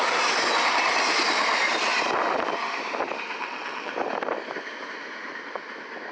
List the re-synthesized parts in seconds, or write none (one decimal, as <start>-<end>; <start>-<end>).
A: 3.4-3.9